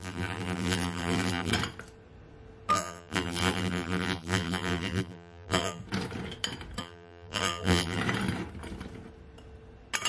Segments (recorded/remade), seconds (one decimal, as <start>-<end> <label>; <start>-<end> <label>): 0.0-1.5 remade; 1.5-2.7 recorded; 2.7-5.8 remade; 5.8-6.8 recorded; 6.8-8.0 remade; 8.0-10.1 recorded